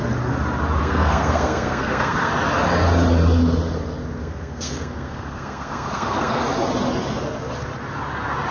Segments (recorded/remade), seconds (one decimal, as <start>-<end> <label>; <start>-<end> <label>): 0.0-0.8 recorded; 0.8-2.3 remade; 2.3-4.2 recorded; 4.2-6.4 remade; 6.4-8.5 recorded